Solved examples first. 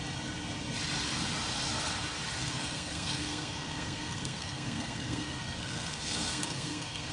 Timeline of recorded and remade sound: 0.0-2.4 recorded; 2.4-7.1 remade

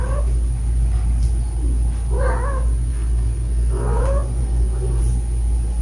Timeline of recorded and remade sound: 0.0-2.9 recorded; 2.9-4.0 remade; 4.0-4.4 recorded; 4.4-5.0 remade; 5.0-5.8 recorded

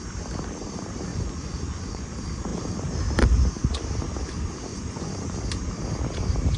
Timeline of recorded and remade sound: 0.0-1.1 recorded; 1.1-2.1 remade; 2.1-4.7 recorded; 4.7-5.3 remade; 5.3-6.6 recorded

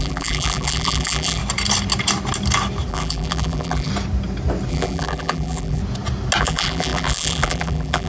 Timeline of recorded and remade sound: 0.0-1.4 remade; 1.4-2.9 recorded; 2.9-3.9 remade; 3.9-4.7 recorded; 4.7-5.8 remade; 5.8-6.4 recorded; 6.4-8.1 remade